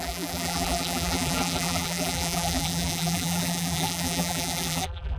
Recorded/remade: remade